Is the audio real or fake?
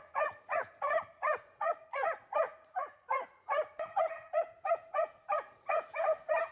fake